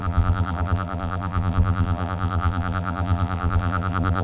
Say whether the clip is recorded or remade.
remade